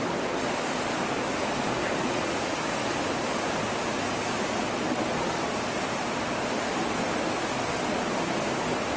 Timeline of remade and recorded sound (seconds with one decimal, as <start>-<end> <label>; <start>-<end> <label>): 0.0-2.0 recorded; 2.0-2.6 remade; 2.6-9.0 recorded

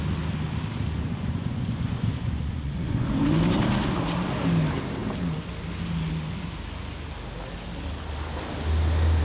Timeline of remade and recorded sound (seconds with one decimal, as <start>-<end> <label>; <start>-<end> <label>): 0.0-1.0 recorded; 1.0-3.1 remade; 3.1-9.2 recorded

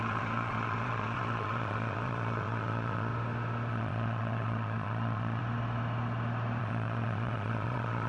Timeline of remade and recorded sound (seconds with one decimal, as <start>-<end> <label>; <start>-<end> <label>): 0.0-3.1 remade; 3.1-3.7 recorded; 3.7-5.4 remade; 5.4-6.6 recorded; 6.6-8.1 remade

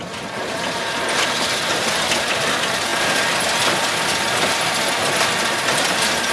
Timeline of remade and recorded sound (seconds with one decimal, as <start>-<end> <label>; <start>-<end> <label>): 0.0-6.3 recorded